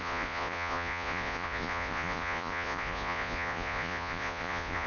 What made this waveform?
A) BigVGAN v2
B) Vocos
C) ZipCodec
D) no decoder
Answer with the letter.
B